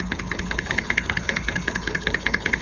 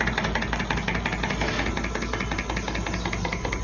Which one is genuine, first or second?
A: second